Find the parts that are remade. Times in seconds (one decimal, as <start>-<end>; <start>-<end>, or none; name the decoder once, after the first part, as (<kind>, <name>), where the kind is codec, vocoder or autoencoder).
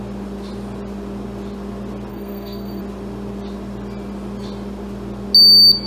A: 2.1-2.8 (codec, SNAC)